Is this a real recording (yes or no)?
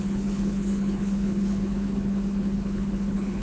no